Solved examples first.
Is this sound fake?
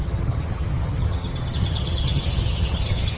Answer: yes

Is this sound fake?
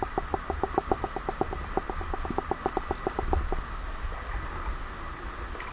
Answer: no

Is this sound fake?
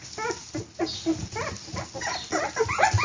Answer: no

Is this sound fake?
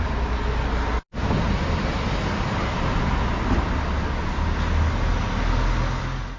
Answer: no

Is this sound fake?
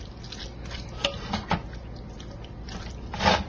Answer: no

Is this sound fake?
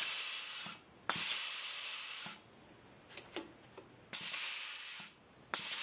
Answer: no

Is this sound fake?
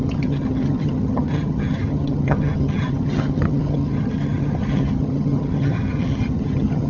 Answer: yes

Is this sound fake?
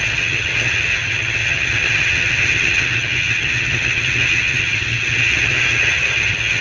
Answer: yes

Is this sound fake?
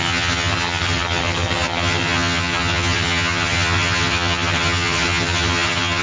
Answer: yes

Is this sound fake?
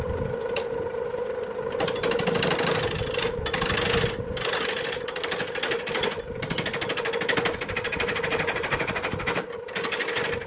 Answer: no